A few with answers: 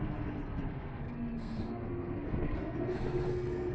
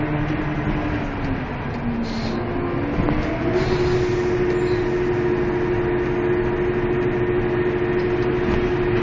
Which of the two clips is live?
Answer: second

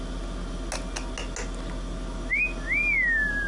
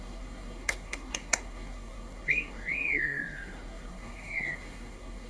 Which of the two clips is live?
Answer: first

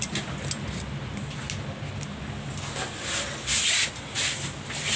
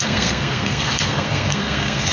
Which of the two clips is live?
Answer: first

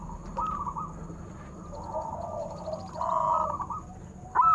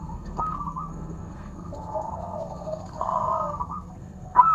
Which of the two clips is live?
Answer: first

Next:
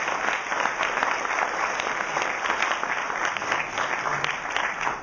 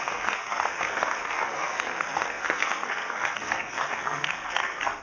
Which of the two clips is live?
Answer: first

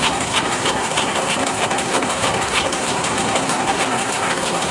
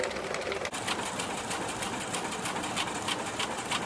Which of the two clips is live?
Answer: second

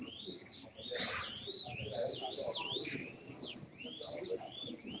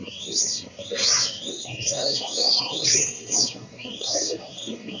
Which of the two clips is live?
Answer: first